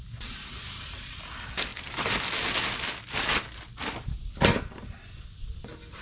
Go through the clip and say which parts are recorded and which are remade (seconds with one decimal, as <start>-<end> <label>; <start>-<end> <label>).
0.0-6.0 recorded